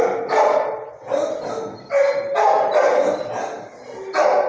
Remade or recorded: recorded